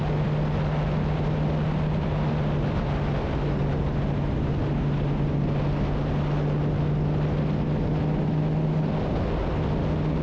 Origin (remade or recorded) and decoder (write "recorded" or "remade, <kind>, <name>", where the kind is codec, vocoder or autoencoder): recorded